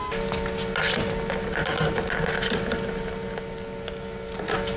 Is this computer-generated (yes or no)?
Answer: no